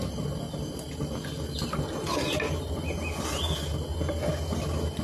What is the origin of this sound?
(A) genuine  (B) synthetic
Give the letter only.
A